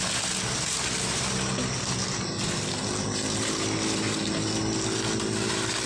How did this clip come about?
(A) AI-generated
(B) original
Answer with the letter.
B